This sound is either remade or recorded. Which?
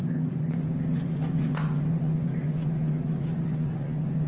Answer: remade